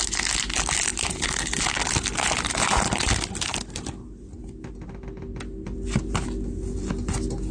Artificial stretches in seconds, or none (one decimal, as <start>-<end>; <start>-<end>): 0.9-1.6